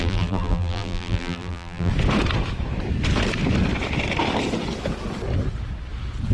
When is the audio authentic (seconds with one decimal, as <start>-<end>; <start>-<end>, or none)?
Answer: 1.9-6.3